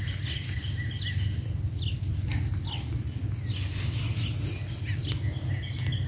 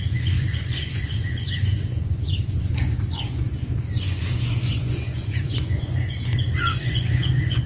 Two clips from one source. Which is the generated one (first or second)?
second